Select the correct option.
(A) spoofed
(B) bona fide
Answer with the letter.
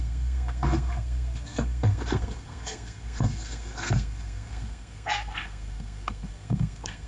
A